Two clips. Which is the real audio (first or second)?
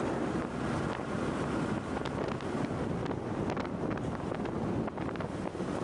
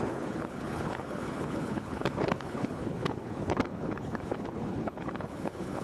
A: first